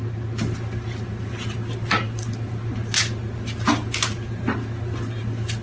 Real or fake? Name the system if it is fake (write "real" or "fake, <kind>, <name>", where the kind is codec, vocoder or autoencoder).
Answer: real